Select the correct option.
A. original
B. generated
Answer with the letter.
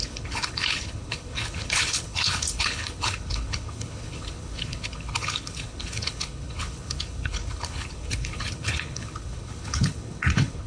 B